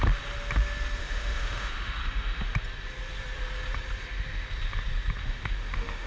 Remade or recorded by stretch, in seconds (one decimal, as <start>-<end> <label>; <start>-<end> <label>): 0.0-1.0 recorded; 1.0-2.0 remade; 2.0-5.2 recorded; 5.2-6.1 remade